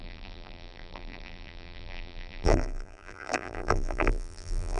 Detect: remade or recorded remade